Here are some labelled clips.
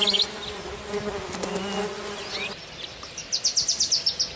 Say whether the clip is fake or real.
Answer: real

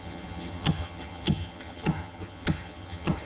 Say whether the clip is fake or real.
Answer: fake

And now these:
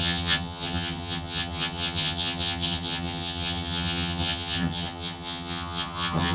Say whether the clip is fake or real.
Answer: fake